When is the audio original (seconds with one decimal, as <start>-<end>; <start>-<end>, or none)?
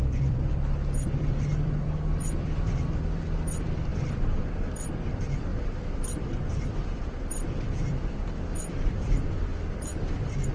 none